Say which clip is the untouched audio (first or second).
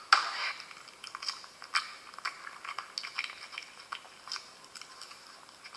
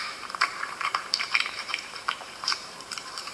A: first